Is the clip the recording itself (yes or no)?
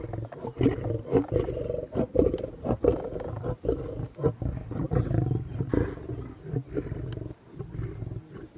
yes